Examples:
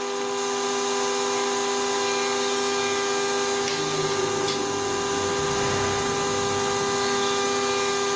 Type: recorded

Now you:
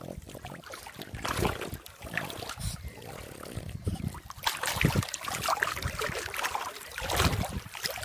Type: recorded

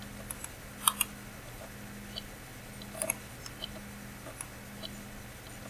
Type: recorded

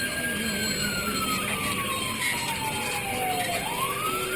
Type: recorded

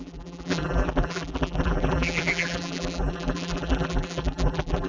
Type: remade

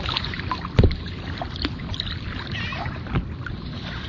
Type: remade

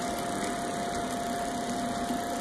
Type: recorded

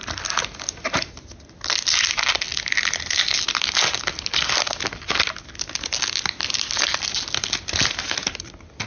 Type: recorded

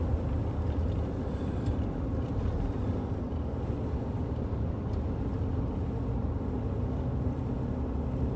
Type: recorded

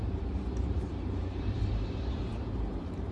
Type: remade